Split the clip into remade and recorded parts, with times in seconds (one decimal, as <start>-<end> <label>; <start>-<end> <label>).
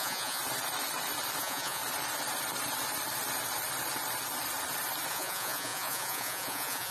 0.0-0.4 remade; 0.4-1.4 recorded; 1.4-1.8 remade; 1.8-5.1 recorded; 5.1-6.9 remade